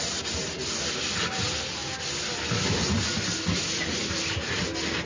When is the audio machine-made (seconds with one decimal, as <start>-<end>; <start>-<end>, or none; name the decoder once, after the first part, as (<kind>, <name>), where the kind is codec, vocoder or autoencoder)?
none